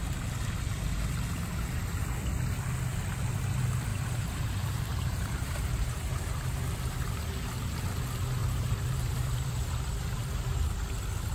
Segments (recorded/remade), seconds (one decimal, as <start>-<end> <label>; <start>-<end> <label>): 0.0-3.9 recorded; 3.9-6.3 remade; 6.3-8.4 recorded; 8.4-10.5 remade; 10.5-11.3 recorded